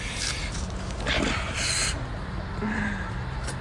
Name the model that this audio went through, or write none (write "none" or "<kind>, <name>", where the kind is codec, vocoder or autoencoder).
none